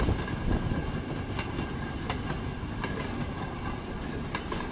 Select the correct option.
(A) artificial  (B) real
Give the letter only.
B